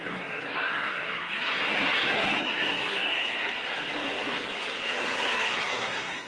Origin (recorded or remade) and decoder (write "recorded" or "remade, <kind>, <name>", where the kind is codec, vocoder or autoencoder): remade, codec, SNAC